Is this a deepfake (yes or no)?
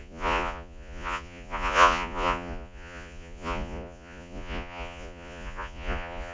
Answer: yes